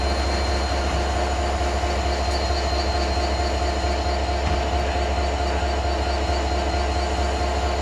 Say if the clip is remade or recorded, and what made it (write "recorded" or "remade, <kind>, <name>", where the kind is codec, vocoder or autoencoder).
recorded